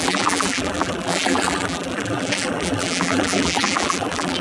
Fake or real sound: fake